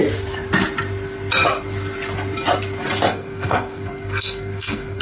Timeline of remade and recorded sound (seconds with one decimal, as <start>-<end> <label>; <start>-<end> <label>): 0.0-3.1 recorded; 3.1-5.0 remade